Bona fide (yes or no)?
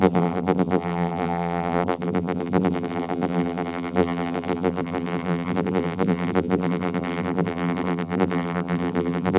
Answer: no